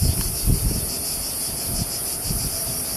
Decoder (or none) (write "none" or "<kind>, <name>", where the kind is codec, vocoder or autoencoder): none